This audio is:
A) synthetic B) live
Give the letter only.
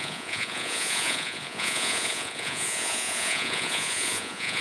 A